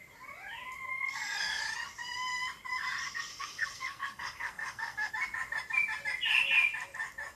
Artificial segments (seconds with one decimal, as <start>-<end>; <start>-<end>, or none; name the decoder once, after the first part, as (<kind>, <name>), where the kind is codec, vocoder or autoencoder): 0.9-1.6 (codec, SNAC); 3.3-5.1